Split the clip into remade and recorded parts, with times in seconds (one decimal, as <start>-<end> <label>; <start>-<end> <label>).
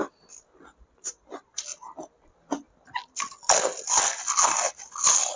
0.0-5.4 recorded